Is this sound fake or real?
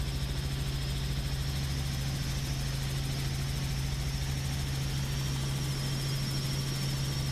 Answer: real